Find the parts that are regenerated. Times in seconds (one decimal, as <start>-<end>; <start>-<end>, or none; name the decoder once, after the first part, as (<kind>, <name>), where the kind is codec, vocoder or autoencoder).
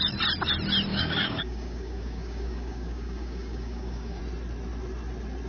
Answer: 0.9-4.2 (codec, DAC)